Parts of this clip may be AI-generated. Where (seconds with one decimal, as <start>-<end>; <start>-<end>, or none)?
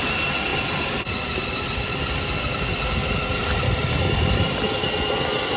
none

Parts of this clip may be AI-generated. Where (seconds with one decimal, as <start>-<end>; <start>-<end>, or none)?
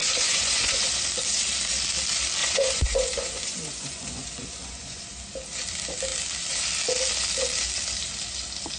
0.0-1.0; 2.4-5.0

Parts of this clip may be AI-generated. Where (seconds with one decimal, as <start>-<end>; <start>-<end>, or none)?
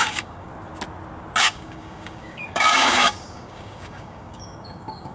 0.0-0.5; 1.4-5.1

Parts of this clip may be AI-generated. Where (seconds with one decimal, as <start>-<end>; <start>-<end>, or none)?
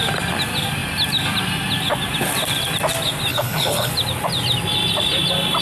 3.3-3.9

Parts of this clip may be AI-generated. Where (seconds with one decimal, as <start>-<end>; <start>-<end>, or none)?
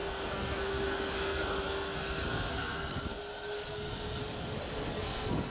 0.0-3.2; 3.7-4.2; 4.9-5.5